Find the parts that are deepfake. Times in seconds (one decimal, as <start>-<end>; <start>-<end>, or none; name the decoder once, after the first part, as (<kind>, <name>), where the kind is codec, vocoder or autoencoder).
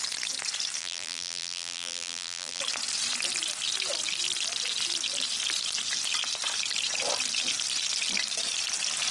0.8-2.6 (vocoder, BigVGAN v2)